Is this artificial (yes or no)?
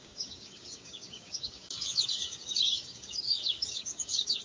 yes